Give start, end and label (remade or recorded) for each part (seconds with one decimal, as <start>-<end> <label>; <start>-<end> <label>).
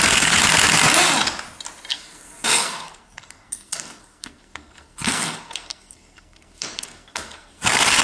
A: 0.0-0.4 remade; 0.4-1.9 recorded; 1.9-8.0 remade